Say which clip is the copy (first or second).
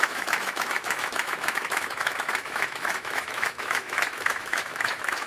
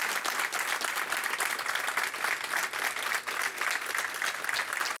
first